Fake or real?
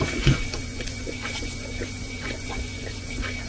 fake